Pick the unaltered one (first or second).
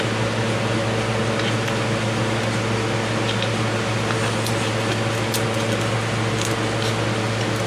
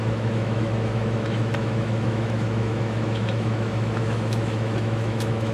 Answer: first